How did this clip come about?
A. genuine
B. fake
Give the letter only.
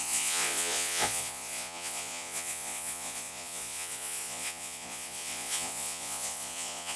B